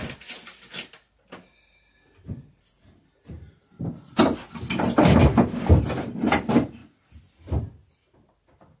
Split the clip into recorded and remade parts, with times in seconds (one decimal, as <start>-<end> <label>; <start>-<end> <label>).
0.0-8.8 recorded